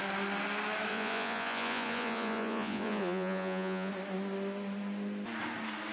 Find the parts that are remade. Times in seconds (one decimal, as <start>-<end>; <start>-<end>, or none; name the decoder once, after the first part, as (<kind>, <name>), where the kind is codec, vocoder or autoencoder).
0.9-3.9 (vocoder, Vocos)